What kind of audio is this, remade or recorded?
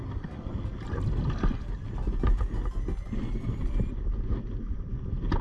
recorded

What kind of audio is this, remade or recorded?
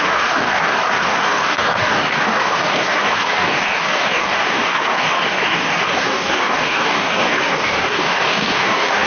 remade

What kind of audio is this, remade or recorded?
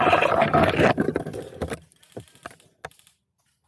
recorded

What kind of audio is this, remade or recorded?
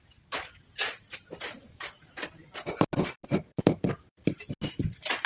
recorded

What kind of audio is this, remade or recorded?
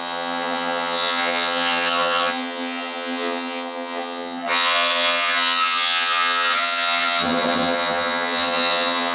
remade